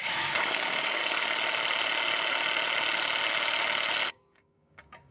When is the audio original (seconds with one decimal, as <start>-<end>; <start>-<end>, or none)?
1.0-4.1